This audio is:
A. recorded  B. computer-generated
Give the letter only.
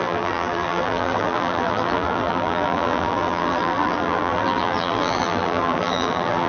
B